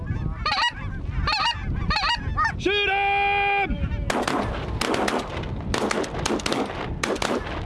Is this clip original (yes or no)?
yes